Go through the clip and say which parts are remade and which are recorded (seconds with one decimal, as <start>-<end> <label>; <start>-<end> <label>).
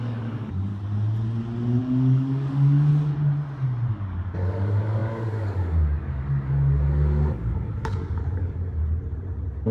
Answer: 0.0-0.7 remade; 0.7-1.8 recorded; 1.8-2.9 remade; 2.9-3.9 recorded; 3.9-8.8 remade; 8.8-9.7 recorded